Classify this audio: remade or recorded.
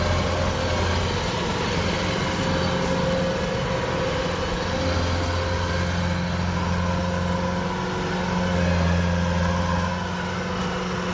recorded